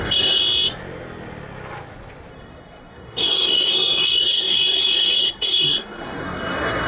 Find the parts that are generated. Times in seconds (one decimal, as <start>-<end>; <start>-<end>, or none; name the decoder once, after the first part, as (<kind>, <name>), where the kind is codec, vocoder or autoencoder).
0.0-0.4 (codec, SNAC); 2.3-6.9